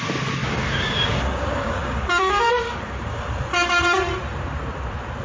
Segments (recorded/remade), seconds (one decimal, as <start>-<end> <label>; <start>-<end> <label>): 0.0-0.4 recorded; 0.4-3.2 remade; 3.2-5.2 recorded